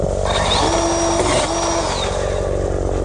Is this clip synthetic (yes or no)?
no